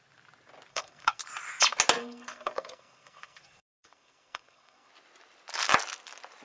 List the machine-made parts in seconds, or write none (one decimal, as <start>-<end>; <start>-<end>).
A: 0.7-1.2; 2.0-4.9